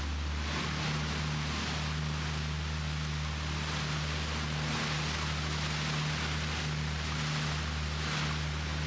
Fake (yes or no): no